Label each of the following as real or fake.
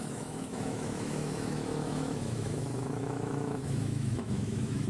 fake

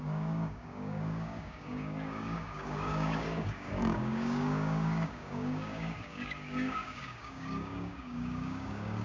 fake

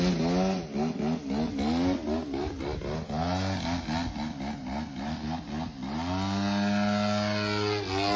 real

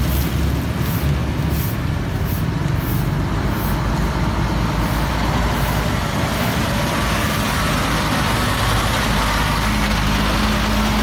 real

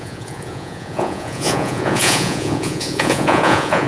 fake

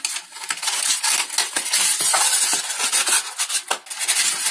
real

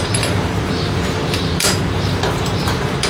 fake